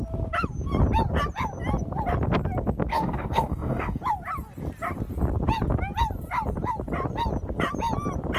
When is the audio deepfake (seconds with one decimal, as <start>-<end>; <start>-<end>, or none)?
2.9-4.0